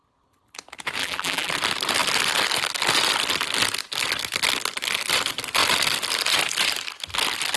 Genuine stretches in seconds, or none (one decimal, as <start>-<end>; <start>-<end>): 0.0-1.0; 1.5-7.6